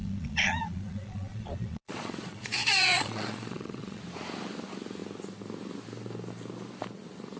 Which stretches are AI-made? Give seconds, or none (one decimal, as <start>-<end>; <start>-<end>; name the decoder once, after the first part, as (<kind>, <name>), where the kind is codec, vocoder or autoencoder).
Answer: 0.0-4.0 (vocoder, Vocos)